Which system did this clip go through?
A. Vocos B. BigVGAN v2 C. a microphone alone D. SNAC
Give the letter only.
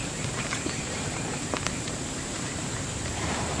B